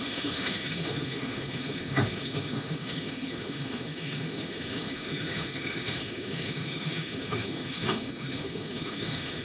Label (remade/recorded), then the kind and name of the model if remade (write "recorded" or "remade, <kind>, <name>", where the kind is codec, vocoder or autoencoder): remade, autoencoder, DAC-VAE